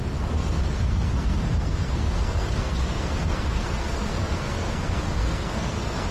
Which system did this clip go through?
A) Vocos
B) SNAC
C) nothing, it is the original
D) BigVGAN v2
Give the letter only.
B